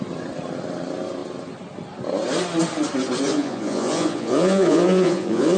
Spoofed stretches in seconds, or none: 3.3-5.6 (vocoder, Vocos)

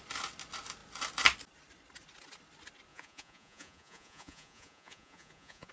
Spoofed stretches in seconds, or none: 2.9-5.7 (vocoder, Vocos)

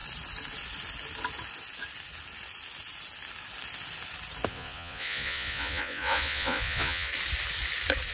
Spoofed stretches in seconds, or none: 4.5-7.1 (vocoder, Vocos)

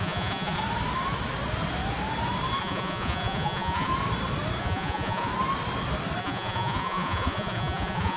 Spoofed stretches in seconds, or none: 0.0-0.6 (vocoder, Vocos); 2.6-3.9; 4.6-5.3; 6.2-8.2

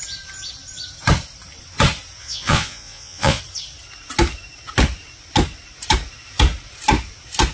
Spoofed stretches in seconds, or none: 2.2-3.4 (vocoder, Vocos)

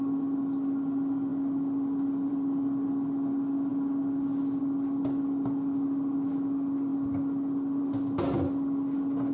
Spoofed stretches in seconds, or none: none